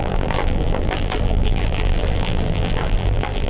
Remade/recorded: remade